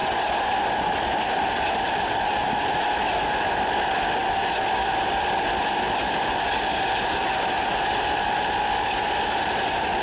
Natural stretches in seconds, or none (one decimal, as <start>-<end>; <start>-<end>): 0.0-10.0

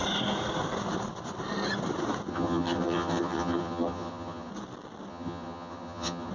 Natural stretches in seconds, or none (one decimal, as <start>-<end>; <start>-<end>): 0.0-2.3; 4.5-5.1